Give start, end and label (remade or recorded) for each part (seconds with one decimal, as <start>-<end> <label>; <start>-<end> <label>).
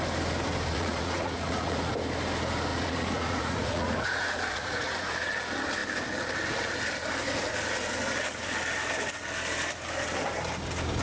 0.0-0.7 recorded; 0.7-1.9 remade; 1.9-2.7 recorded; 2.7-5.3 remade; 5.3-11.0 recorded